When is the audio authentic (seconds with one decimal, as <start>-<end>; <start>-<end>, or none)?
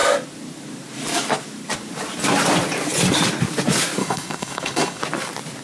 0.0-4.0; 5.0-5.6